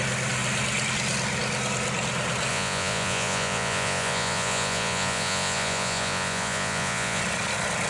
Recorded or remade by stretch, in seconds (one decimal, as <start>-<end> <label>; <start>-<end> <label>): 0.0-2.5 recorded; 2.5-7.2 remade; 7.2-7.9 recorded